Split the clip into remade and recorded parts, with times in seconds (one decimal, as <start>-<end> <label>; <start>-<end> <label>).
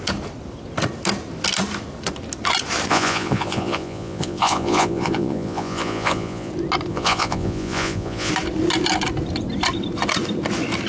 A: 0.0-2.9 recorded; 2.9-6.5 remade; 6.5-6.9 recorded; 6.9-8.3 remade; 8.3-10.9 recorded